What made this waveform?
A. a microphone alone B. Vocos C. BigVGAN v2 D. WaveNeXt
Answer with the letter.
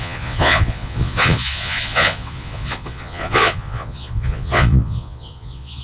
B